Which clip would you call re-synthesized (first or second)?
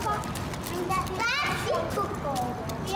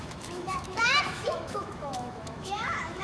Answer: second